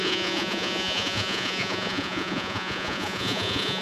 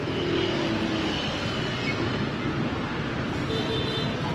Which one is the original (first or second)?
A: second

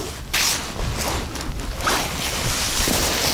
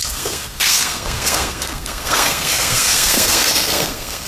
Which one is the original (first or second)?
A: first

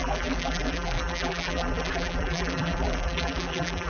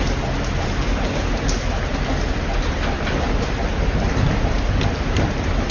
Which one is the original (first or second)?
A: second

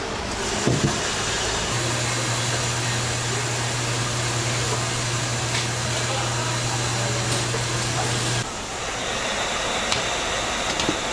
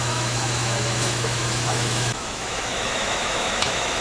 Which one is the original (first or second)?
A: first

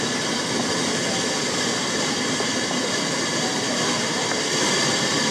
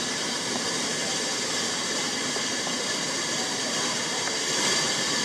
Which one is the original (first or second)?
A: first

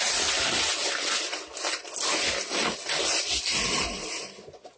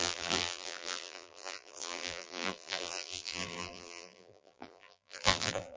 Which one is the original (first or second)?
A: first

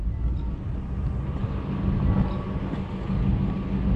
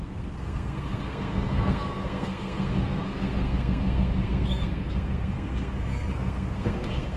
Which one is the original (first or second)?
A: first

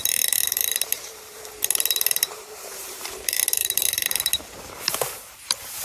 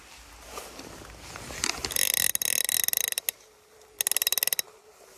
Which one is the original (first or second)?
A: second